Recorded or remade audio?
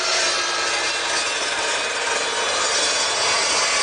recorded